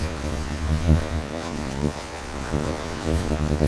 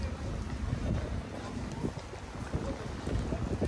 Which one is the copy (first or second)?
first